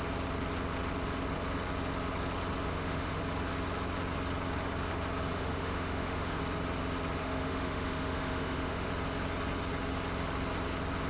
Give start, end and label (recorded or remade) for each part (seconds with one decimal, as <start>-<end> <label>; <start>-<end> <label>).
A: 0.0-2.7 recorded; 2.7-3.2 remade; 3.2-5.3 recorded; 5.3-6.4 remade; 6.4-7.2 recorded; 7.2-8.9 remade; 8.9-11.1 recorded